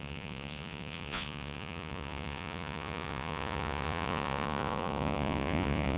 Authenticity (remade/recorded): remade